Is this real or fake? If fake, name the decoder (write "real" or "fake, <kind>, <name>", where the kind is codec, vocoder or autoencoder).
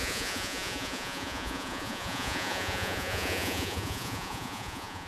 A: fake, vocoder, Vocos